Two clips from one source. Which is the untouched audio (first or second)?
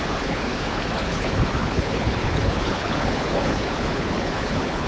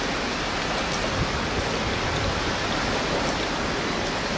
second